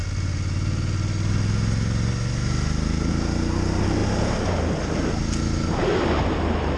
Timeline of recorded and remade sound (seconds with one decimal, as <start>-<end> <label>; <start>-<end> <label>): 0.0-6.8 recorded